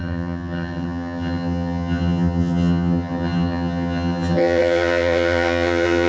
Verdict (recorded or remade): remade